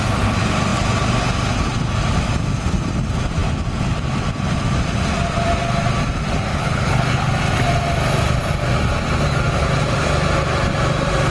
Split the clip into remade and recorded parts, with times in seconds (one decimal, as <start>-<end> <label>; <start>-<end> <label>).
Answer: 0.0-6.5 recorded; 6.5-7.3 remade; 7.3-11.3 recorded